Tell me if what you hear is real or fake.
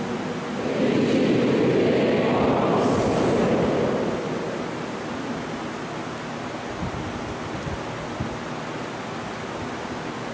real